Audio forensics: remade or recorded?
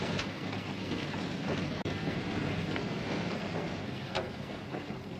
remade